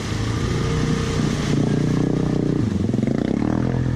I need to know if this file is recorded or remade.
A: recorded